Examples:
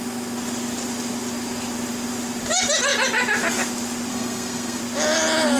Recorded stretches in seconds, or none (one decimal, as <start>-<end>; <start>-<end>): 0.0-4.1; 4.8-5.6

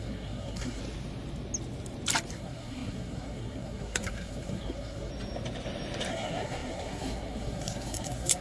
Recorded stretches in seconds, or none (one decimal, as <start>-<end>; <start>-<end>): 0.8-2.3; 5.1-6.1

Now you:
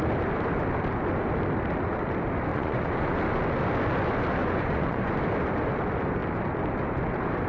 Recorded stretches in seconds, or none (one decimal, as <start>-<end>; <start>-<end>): 0.0-2.5; 3.2-4.4; 5.2-7.5